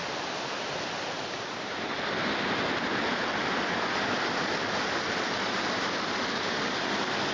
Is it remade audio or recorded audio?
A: recorded